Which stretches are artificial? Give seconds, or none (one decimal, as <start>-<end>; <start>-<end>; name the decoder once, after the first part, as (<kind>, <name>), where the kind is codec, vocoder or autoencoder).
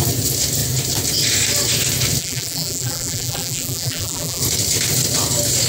2.2-4.4 (vocoder, BigVGAN v2)